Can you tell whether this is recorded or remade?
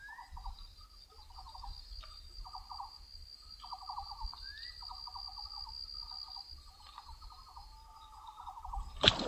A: recorded